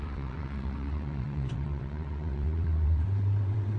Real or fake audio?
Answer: fake